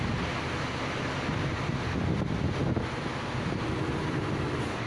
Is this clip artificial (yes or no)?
no